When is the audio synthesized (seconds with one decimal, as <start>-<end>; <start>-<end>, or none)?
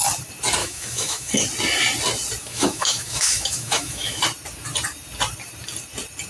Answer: 0.6-1.3; 2.4-4.2